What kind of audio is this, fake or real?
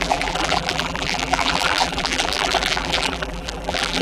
fake